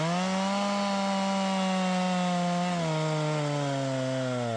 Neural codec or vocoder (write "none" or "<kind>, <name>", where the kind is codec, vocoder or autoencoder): none